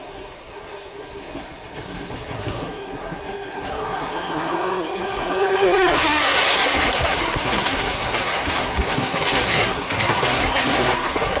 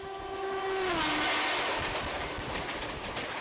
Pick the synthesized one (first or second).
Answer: first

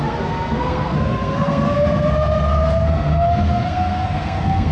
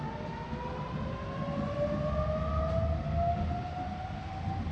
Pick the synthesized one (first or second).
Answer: first